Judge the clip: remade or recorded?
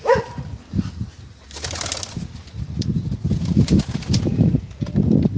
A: recorded